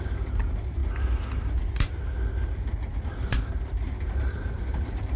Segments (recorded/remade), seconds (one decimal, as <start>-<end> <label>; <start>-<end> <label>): 0.0-0.8 remade; 0.8-3.9 recorded; 3.9-5.2 remade